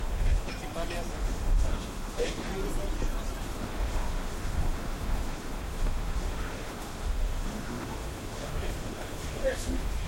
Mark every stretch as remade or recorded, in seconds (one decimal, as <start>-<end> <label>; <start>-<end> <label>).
0.0-0.5 remade; 0.5-1.1 recorded; 1.1-2.5 remade; 2.5-3.4 recorded; 3.4-10.1 remade

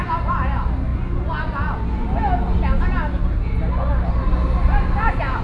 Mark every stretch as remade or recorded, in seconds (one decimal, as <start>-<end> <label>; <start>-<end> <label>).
0.0-5.4 recorded

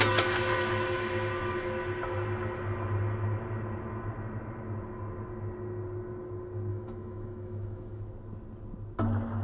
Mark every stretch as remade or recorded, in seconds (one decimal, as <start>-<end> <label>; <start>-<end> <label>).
0.0-6.7 recorded; 6.7-8.0 remade; 8.0-9.4 recorded

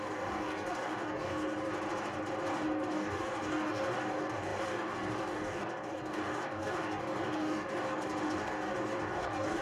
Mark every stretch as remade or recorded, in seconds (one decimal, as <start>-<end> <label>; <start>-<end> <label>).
0.0-1.7 remade; 1.7-2.5 recorded; 2.5-9.6 remade

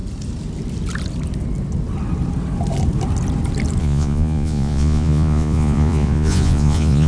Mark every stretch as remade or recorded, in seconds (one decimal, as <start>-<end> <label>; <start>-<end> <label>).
0.0-3.8 recorded; 3.8-7.1 remade

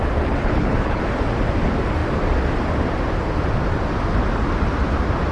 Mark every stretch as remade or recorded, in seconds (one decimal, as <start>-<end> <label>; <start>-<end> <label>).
0.0-0.4 recorded; 0.4-1.0 remade; 1.0-5.3 recorded

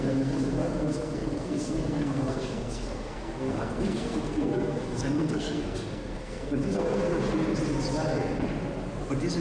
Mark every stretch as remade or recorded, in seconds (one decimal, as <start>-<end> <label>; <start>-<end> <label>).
0.0-7.1 remade; 7.1-9.4 recorded